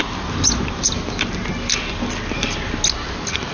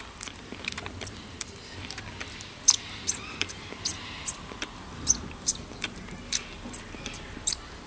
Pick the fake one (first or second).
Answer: second